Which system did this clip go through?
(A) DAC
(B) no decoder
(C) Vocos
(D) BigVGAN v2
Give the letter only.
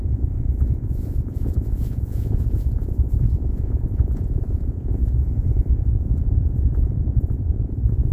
C